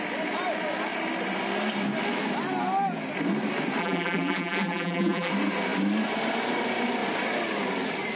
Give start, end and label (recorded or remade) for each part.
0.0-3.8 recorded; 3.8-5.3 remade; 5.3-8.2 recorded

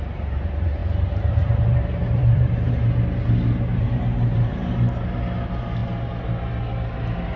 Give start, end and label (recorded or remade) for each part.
0.0-0.8 recorded; 0.8-2.7 remade; 2.7-3.7 recorded; 3.7-4.7 remade; 4.7-7.4 recorded

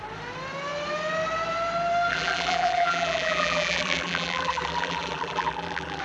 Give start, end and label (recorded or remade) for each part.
0.0-2.1 recorded; 2.1-6.0 remade

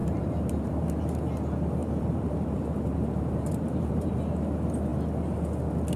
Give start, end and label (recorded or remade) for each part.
0.0-0.7 remade; 0.7-1.8 recorded; 1.8-4.1 remade; 4.1-6.0 recorded

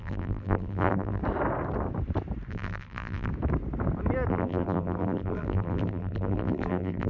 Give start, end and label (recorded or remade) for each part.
0.0-1.2 remade; 1.2-2.5 recorded; 2.5-3.3 remade; 3.3-4.3 recorded; 4.3-7.1 remade